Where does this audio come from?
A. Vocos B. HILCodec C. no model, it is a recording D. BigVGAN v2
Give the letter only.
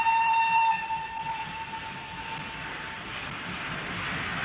C